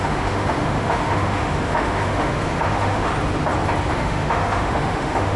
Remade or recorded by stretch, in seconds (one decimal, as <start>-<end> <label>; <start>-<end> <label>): 0.0-3.1 remade; 3.1-3.9 recorded; 3.9-5.4 remade